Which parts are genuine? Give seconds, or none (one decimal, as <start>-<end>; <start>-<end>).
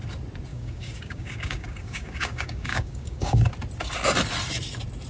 0.0-0.5; 3.5-5.1